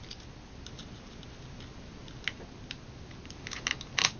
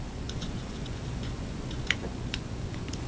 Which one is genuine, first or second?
first